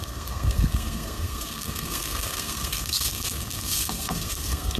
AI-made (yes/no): yes